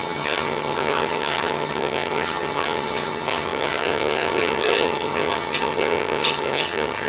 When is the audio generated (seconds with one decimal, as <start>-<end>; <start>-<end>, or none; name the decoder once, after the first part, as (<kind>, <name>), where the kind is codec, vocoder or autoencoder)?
0.0-7.1 (vocoder, HiFi-GAN)